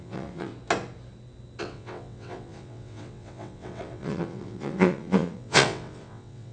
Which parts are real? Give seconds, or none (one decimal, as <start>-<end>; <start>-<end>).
0.5-1.6